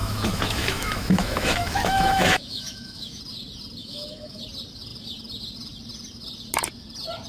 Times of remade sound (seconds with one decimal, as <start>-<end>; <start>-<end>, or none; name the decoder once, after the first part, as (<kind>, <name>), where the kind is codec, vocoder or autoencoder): 0.0-3.2 (autoencoder, DAC-VAE); 3.8-4.4